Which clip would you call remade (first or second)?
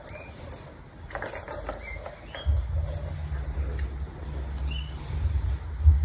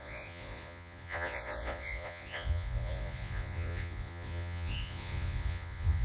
second